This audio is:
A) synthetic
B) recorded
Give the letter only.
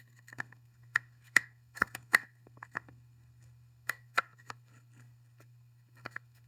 A